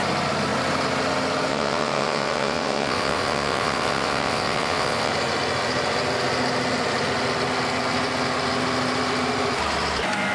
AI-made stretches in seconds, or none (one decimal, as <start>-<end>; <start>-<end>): 1.5-5.1